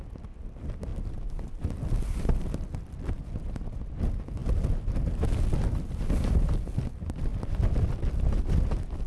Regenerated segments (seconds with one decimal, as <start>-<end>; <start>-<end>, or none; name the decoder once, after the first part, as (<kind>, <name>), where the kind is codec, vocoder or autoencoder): none